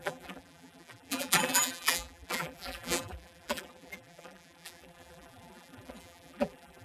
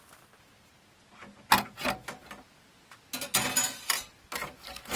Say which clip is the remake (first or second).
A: first